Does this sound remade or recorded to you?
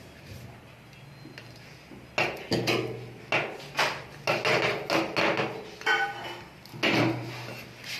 recorded